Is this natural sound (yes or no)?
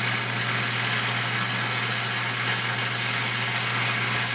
yes